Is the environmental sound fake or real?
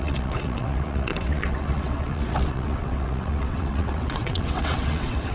fake